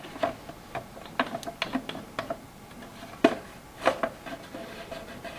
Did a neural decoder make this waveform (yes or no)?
no